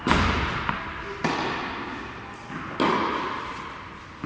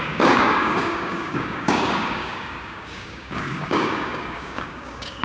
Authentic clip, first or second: first